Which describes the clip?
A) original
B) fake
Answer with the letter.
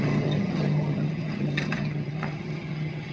B